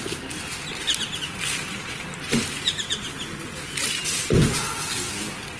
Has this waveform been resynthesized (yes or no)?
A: no